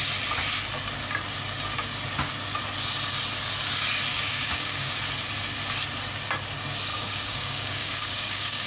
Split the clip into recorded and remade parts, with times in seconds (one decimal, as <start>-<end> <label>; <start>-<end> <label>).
0.0-4.1 recorded; 4.1-4.9 remade; 4.9-6.9 recorded; 6.9-8.7 remade